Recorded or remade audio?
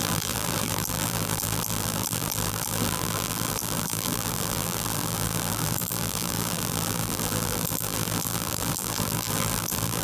remade